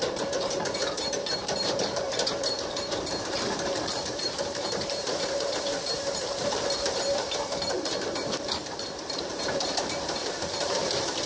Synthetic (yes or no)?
yes